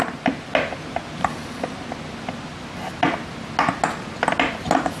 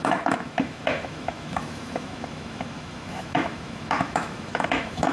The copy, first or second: second